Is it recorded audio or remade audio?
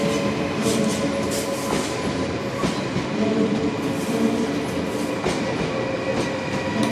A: recorded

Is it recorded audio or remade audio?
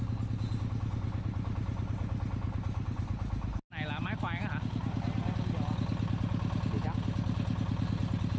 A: recorded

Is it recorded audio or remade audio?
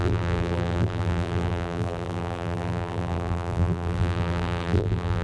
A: remade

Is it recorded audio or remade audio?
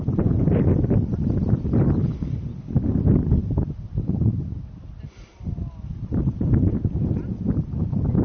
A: recorded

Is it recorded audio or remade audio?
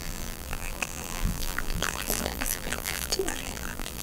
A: remade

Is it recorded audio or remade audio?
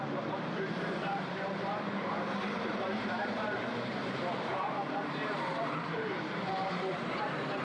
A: remade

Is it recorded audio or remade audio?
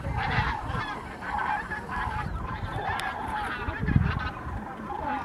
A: remade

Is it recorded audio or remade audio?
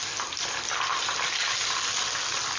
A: recorded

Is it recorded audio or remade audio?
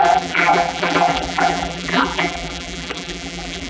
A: remade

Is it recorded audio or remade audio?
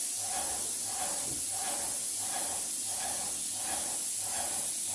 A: recorded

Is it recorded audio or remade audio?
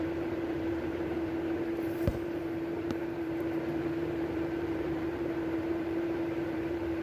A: remade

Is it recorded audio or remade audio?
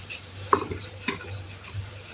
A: remade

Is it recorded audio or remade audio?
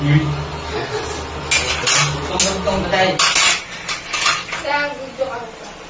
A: recorded